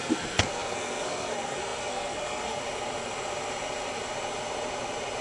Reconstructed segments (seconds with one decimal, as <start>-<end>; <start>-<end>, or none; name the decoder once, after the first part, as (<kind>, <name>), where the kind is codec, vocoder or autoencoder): 0.0-2.6 (codec, SNAC)